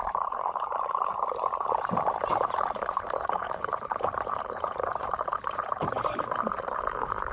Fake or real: fake